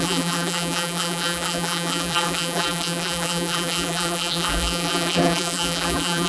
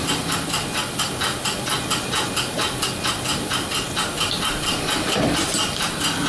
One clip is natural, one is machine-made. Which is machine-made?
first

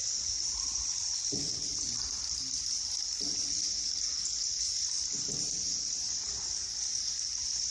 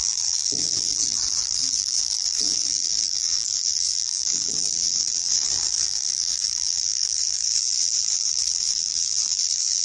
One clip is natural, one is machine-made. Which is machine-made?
second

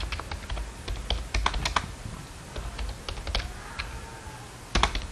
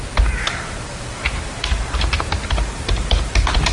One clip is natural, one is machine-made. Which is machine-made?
second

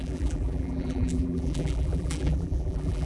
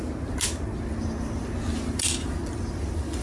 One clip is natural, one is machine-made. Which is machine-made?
first